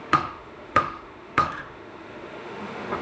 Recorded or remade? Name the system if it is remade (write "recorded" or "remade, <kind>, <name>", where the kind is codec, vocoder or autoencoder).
remade, autoencoder, DAC-VAE